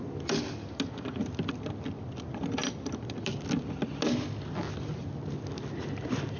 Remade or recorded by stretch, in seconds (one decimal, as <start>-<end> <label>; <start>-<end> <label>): 0.0-6.4 recorded